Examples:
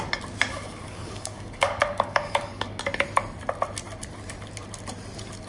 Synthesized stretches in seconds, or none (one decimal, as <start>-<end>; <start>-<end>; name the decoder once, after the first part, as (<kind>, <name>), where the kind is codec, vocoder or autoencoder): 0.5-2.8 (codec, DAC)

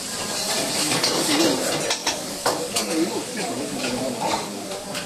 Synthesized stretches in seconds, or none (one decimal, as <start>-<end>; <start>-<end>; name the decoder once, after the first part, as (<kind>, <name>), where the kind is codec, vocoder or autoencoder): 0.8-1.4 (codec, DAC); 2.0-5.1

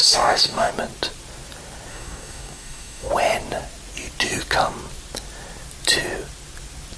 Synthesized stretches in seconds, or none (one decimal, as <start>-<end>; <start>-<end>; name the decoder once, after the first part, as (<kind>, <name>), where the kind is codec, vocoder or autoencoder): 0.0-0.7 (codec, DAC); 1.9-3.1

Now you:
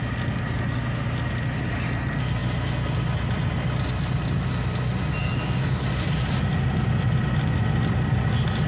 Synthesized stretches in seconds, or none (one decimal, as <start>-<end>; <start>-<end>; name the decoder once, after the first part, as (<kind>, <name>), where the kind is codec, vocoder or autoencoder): 5.2-5.8 (codec, DAC)